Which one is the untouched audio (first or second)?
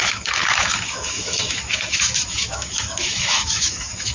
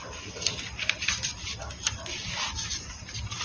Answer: second